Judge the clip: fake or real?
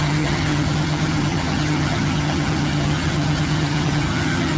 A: fake